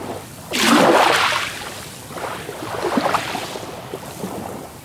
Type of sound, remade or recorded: recorded